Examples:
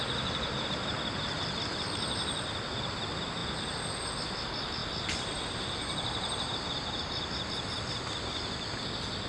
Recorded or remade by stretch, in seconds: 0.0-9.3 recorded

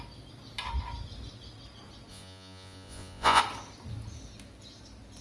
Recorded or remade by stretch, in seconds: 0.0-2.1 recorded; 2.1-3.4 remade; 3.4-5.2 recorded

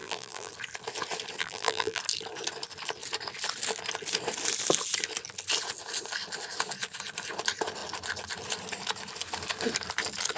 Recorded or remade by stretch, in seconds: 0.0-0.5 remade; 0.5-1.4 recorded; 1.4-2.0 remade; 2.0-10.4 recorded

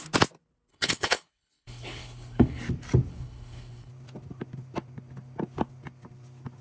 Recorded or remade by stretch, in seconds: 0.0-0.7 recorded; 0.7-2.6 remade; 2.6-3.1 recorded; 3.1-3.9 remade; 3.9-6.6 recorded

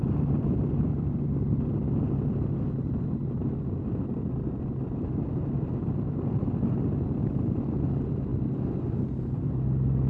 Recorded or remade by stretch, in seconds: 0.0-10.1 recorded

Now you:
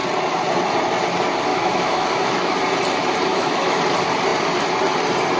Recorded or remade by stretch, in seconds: 0.0-1.5 recorded; 1.5-2.5 remade; 2.5-3.3 recorded; 3.3-3.8 remade; 3.8-5.4 recorded